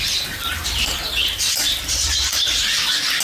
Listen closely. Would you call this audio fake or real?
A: fake